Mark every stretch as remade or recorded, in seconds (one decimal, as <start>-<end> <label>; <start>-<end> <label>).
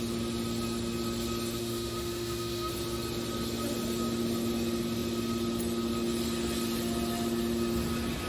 0.0-1.6 recorded; 1.6-2.7 remade; 2.7-8.3 recorded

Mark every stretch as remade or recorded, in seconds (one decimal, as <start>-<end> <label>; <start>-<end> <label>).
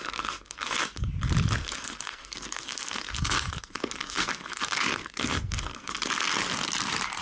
0.0-1.0 remade; 1.0-1.6 recorded; 1.6-5.9 remade; 5.9-7.2 recorded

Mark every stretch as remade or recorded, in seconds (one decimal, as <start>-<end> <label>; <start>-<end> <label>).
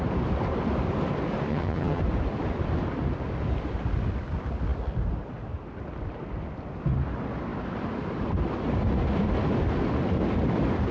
0.0-1.5 recorded; 1.5-2.0 remade; 2.0-10.9 recorded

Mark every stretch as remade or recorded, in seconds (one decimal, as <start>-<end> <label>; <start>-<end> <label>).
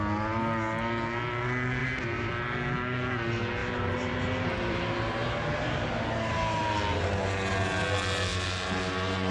0.0-1.8 recorded; 1.8-2.3 remade; 2.3-3.6 recorded; 3.6-5.9 remade; 5.9-8.3 recorded; 8.3-9.3 remade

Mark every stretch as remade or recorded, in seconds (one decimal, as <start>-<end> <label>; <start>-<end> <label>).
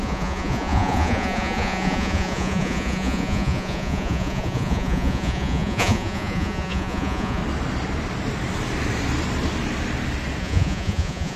0.0-7.4 remade; 7.4-10.4 recorded; 10.4-11.4 remade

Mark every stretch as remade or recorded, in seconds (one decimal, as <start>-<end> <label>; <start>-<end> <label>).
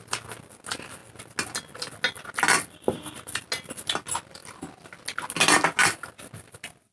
0.0-6.9 recorded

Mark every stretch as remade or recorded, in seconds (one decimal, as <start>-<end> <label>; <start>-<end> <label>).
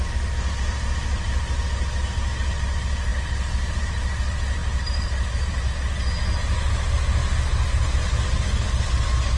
0.0-4.6 recorded; 4.6-5.8 remade; 5.8-9.4 recorded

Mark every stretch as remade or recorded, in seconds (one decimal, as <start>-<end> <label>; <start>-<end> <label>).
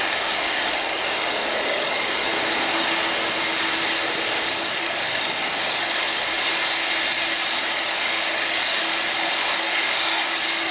0.0-2.3 remade; 2.3-4.4 recorded; 4.4-6.5 remade; 6.5-7.6 recorded; 7.6-8.9 remade; 8.9-9.6 recorded; 9.6-10.7 remade